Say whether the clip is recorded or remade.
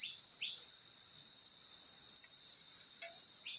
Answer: recorded